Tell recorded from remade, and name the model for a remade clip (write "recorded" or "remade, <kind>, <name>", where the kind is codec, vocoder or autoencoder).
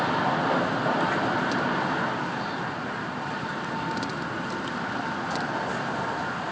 recorded